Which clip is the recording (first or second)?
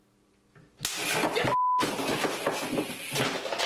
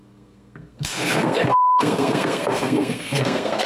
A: first